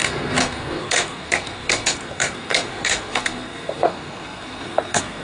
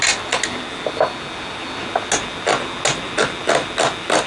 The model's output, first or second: first